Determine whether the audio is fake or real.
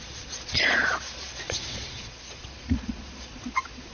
fake